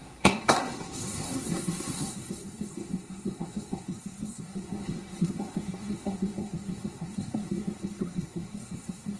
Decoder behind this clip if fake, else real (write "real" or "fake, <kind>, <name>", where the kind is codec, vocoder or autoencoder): fake, codec, SNAC